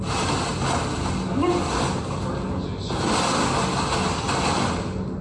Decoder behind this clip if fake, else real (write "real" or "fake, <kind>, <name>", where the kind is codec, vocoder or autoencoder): real